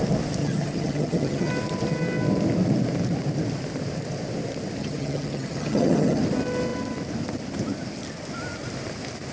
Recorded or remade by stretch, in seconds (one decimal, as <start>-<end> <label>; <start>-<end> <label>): 0.0-0.4 recorded; 0.4-1.5 remade; 1.5-4.8 recorded; 4.8-6.2 remade; 6.2-9.3 recorded